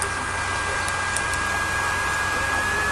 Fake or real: real